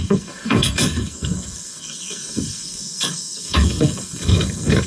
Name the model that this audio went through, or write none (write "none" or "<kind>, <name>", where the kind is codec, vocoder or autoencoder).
codec, SNAC